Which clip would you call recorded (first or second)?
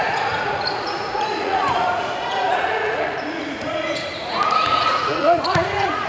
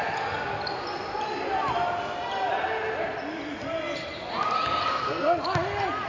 second